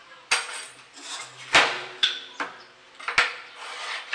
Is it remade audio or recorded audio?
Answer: recorded